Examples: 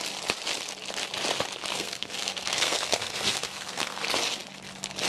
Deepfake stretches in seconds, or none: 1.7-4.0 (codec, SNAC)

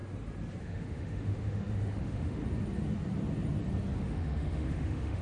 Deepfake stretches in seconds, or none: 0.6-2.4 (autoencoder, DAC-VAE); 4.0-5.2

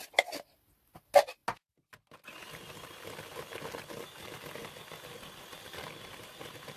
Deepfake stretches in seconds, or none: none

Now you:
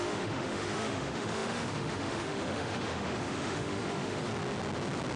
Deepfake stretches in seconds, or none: 0.0-4.3 (autoencoder, DAC-VAE)

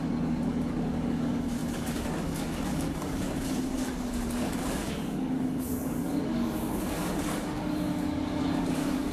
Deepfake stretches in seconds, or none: 0.0-9.1 (codec, DAC)